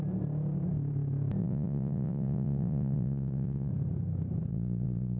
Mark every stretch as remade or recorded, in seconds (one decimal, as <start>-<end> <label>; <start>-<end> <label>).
0.0-1.4 recorded; 1.4-3.7 remade; 3.7-4.5 recorded; 4.5-5.2 remade